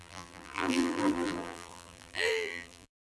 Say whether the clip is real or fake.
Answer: fake